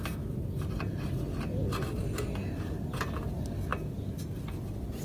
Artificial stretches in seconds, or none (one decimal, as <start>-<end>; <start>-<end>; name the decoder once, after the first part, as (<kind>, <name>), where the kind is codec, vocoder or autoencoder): none